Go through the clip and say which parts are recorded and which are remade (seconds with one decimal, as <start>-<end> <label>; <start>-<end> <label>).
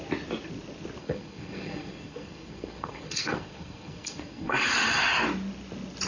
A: 0.0-1.0 recorded; 1.0-4.7 remade; 4.7-6.1 recorded